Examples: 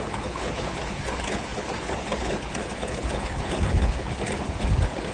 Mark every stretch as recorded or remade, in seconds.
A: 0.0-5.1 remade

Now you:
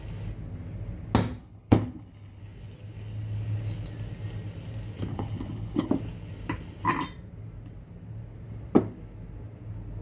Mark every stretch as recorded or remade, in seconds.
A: 0.0-1.4 recorded; 1.4-2.4 remade; 2.4-5.1 recorded; 5.1-5.9 remade; 5.9-10.0 recorded

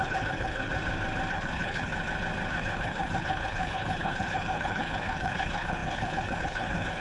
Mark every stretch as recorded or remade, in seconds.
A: 0.0-0.7 remade; 0.7-1.3 recorded; 1.3-1.9 remade; 1.9-2.5 recorded; 2.5-7.0 remade